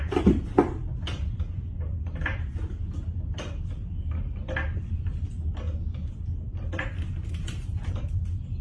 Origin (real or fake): real